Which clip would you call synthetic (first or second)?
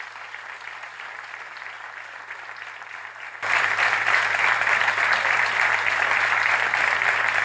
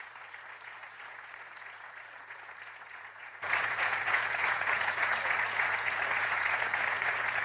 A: second